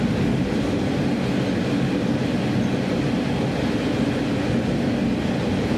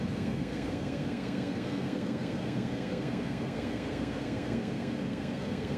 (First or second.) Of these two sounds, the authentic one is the first